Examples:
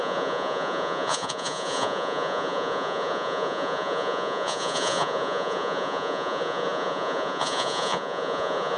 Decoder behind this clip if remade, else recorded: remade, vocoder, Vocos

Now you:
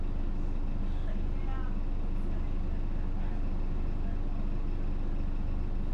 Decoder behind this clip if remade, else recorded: recorded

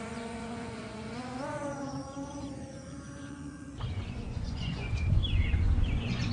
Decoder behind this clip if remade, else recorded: remade, vocoder, Vocos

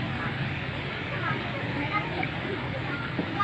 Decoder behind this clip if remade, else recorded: remade, codec, DAC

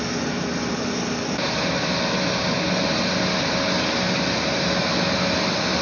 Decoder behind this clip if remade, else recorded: recorded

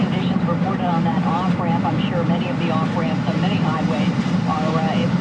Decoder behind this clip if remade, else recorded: recorded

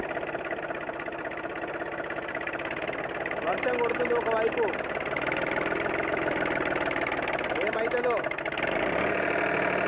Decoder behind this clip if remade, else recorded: recorded